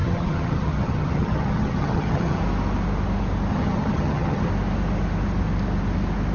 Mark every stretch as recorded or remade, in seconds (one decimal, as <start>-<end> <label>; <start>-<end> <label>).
0.0-2.4 remade; 2.4-3.5 recorded; 3.5-4.5 remade; 4.5-6.3 recorded